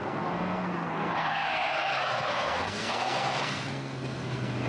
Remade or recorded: remade